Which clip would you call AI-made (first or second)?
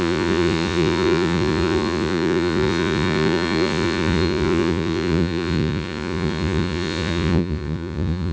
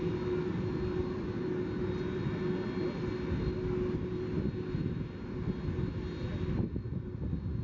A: first